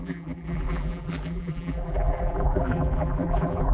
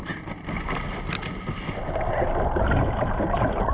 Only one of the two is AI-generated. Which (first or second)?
first